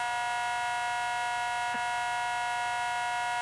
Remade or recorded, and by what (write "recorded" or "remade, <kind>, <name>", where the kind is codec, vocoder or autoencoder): recorded